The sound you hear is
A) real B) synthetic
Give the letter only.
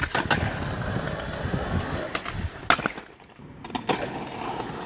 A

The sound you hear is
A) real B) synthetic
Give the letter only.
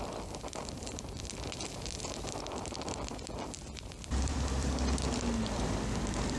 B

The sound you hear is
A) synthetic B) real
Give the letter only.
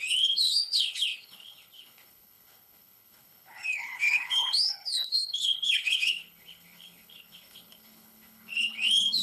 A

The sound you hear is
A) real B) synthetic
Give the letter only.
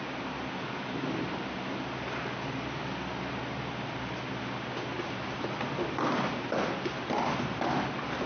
A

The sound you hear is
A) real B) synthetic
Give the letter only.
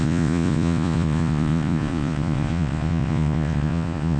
B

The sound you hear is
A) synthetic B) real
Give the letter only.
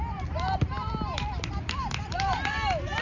A